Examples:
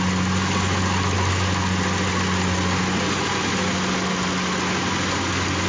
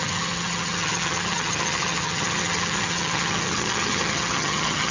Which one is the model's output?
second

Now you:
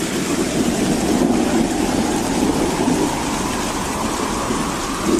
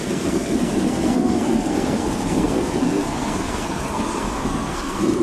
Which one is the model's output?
second